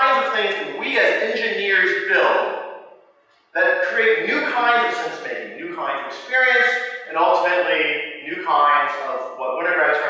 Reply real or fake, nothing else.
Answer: real